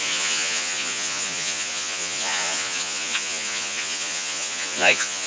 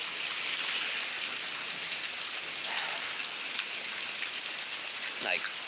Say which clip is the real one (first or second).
second